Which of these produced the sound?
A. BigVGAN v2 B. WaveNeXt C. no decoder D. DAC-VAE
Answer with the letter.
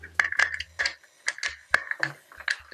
C